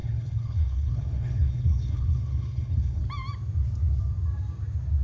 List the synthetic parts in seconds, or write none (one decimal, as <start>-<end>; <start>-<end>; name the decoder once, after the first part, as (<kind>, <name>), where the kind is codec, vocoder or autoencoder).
0.0-3.0 (codec, HILCodec)